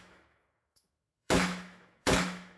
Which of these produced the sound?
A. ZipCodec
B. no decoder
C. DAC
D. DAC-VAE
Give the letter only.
D